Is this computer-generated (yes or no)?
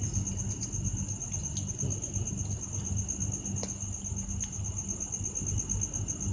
no